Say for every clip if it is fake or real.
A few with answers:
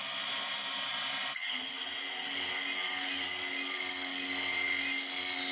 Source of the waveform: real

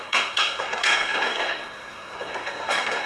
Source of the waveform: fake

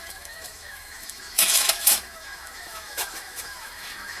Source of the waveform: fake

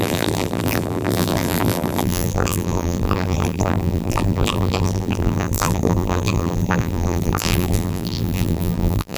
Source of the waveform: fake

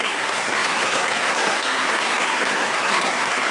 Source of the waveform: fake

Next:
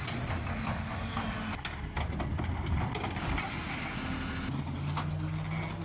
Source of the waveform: real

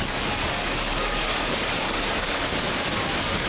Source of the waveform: fake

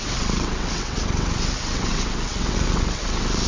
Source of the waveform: fake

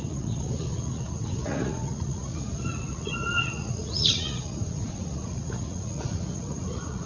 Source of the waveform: fake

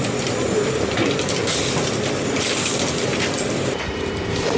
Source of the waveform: real